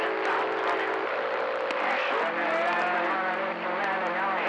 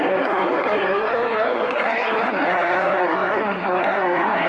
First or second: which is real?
first